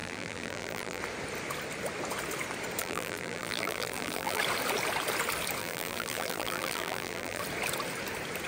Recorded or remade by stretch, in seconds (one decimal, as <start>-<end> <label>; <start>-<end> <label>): 0.0-1.0 remade; 1.0-2.8 recorded; 2.8-4.4 remade; 4.4-5.6 recorded; 5.6-7.4 remade; 7.4-8.5 recorded